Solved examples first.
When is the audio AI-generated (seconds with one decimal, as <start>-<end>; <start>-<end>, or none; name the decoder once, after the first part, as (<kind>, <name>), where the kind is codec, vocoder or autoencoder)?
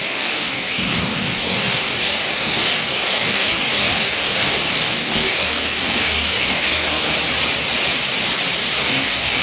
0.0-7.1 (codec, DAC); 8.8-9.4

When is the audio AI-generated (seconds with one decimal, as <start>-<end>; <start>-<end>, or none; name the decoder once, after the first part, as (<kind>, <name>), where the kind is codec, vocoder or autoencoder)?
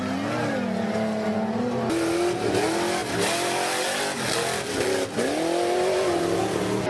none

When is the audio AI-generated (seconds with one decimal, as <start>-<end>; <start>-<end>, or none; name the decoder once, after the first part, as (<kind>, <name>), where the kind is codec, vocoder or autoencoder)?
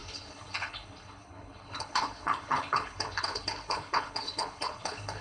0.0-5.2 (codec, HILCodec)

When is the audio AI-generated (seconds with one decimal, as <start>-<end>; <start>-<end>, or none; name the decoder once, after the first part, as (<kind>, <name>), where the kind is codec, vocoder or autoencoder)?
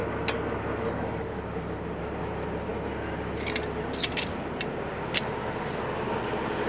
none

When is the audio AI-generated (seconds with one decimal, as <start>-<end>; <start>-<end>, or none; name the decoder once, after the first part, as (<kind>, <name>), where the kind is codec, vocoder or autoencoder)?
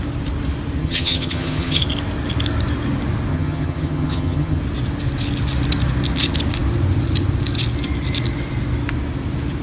0.8-1.8 (vocoder, HiFi-GAN); 3.3-4.6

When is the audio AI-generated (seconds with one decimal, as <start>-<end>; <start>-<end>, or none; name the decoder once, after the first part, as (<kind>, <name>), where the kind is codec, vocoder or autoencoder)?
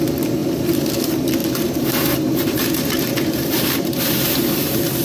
0.4-0.9 (vocoder, BigVGAN v2); 1.4-4.4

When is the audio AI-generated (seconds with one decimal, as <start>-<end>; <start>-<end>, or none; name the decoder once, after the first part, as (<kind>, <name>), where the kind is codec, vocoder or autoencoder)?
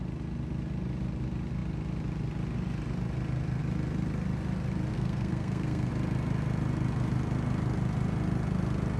4.9-5.9 (codec, SNAC)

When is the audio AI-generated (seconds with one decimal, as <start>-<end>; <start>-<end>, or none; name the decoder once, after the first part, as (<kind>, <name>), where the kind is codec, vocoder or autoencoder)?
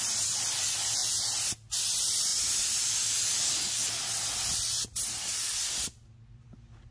none